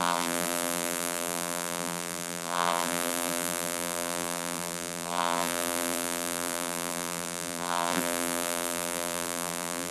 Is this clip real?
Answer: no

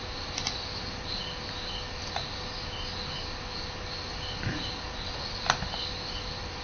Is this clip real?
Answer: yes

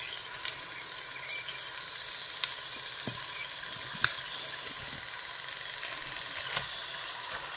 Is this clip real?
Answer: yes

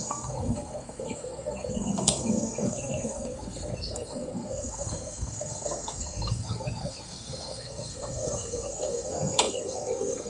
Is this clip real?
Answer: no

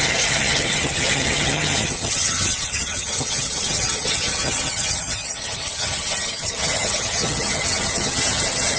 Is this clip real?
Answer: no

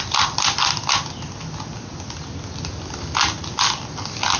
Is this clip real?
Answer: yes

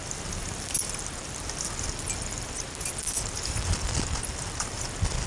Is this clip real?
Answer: yes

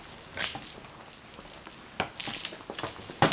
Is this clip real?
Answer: yes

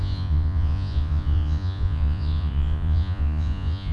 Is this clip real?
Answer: no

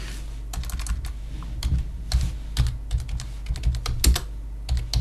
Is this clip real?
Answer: yes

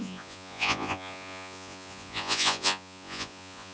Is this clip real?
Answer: no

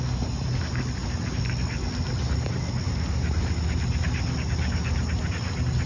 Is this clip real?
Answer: yes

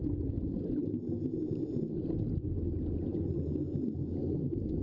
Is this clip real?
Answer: yes